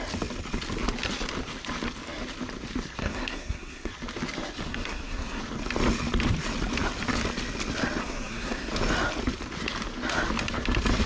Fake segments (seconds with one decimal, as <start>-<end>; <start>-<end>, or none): 3.0-3.9; 4.7-5.4; 8.0-8.7